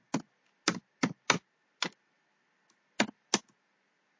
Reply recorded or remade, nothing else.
recorded